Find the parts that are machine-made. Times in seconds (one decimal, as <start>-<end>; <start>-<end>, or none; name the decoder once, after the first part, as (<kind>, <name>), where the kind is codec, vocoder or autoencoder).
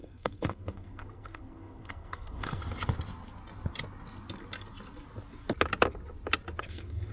0.0-2.6 (codec, SNAC); 6.6-7.1